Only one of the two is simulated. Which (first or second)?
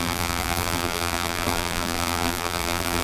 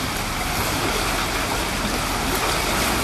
first